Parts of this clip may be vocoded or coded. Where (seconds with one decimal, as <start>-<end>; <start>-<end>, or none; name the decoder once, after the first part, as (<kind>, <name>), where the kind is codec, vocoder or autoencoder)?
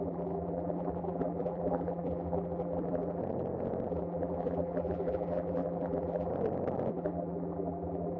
0.0-3.2 (vocoder, BigVGAN v2); 3.9-6.3; 6.9-8.2